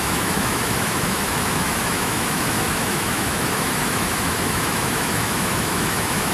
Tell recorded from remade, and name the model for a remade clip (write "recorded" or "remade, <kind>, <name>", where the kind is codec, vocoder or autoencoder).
remade, autoencoder, DAC-VAE